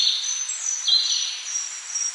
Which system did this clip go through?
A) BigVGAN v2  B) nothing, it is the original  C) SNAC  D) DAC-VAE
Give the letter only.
B